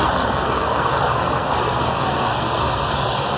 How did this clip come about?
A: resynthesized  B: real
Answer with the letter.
A